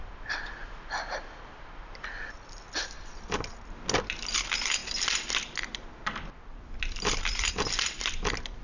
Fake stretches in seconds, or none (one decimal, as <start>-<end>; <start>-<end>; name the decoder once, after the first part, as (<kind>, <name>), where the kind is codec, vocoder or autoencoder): none